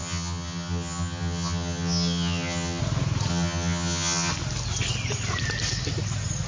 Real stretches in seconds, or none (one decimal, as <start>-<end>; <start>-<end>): 2.8-3.3; 4.3-6.5